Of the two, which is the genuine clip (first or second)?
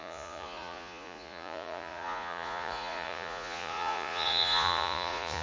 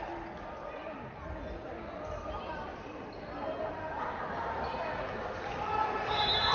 second